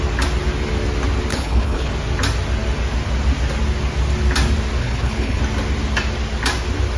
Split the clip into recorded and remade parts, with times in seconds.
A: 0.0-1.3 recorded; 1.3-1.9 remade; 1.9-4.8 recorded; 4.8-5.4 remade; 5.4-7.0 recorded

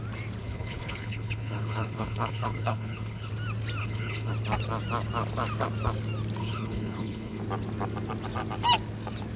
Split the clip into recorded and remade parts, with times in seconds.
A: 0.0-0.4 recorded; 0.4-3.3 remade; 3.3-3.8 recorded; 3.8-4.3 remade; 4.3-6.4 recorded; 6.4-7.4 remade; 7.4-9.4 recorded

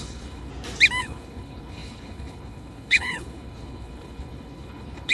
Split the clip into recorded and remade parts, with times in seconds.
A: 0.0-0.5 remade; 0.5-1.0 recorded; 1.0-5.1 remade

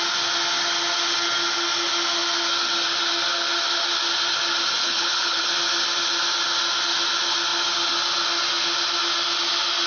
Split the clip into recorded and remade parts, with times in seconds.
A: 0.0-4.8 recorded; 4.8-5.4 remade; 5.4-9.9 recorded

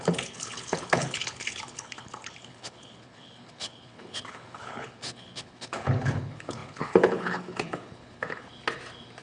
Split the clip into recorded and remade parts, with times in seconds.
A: 0.0-8.5 remade; 8.5-9.2 recorded

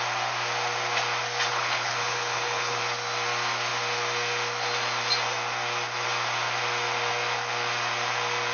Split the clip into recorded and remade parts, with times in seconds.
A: 0.0-1.5 recorded; 1.5-2.8 remade; 2.8-8.5 recorded

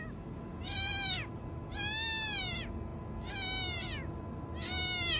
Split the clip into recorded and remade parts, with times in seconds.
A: 0.0-5.2 recorded